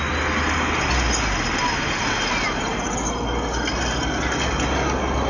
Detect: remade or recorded recorded